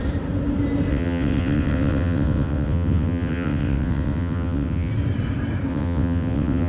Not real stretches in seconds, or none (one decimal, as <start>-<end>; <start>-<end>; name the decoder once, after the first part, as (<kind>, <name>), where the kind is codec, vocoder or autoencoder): 0.9-4.9 (vocoder, WaveNeXt); 5.7-6.7